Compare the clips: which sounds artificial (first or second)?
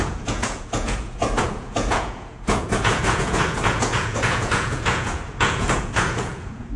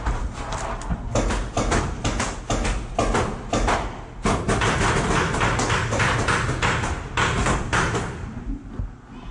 first